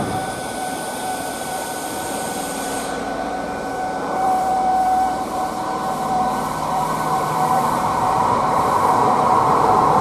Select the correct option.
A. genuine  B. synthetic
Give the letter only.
B